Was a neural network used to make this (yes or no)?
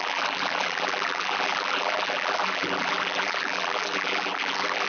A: yes